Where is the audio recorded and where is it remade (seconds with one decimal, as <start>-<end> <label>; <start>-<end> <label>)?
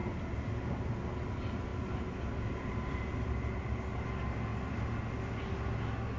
0.0-6.2 recorded